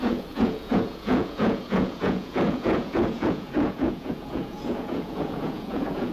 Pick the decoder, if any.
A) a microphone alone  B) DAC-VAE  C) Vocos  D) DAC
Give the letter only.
C